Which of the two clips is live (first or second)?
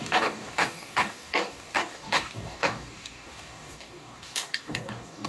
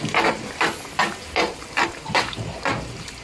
second